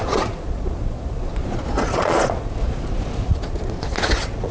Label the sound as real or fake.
fake